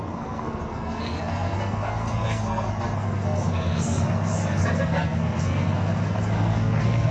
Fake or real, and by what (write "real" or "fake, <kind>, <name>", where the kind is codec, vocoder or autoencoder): fake, codec, SNAC